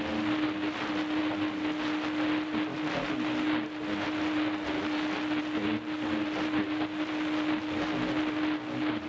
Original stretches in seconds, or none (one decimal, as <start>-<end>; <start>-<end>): 0.0-9.1